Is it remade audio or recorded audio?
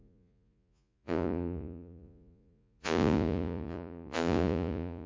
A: remade